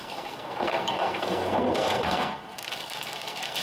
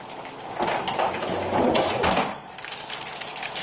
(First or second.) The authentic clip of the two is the second